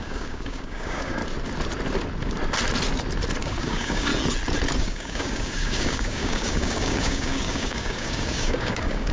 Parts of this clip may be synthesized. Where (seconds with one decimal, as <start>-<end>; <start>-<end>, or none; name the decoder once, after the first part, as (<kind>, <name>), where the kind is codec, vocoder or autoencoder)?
0.0-1.2 (codec, DAC); 3.4-4.1; 4.8-9.1